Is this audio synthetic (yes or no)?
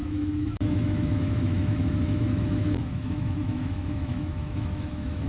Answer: yes